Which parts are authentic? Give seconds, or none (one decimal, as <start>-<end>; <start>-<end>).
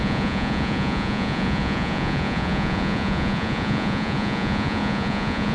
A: none